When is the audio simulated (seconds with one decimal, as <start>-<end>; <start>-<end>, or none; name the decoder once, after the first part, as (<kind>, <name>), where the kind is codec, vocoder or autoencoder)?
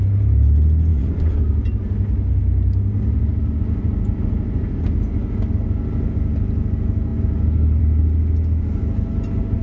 0.9-1.4 (vocoder, Vocos)